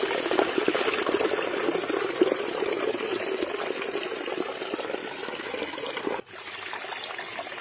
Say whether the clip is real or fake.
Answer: real